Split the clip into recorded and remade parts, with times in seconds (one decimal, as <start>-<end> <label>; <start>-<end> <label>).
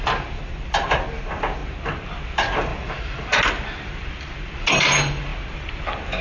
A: 0.0-1.6 recorded; 1.6-2.2 remade; 2.2-2.7 recorded; 2.7-3.2 remade; 3.2-5.3 recorded; 5.3-6.2 remade